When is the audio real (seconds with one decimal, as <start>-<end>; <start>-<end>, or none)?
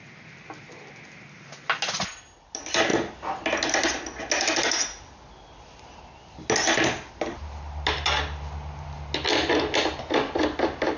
0.0-11.0